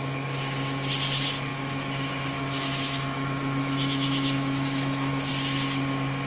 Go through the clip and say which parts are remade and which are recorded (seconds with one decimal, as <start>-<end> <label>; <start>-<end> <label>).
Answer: 0.0-1.5 recorded; 1.5-5.3 remade; 5.3-6.3 recorded